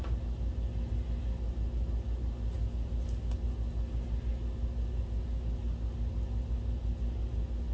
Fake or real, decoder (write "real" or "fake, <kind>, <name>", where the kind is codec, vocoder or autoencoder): real